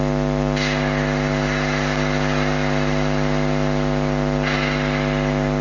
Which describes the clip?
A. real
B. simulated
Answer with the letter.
A